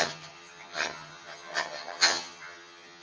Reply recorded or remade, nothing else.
remade